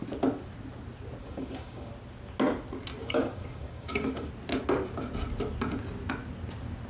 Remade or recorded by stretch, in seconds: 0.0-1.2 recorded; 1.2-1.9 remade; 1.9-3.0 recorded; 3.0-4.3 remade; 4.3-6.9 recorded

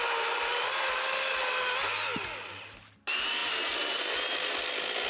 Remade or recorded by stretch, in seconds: 0.0-5.1 recorded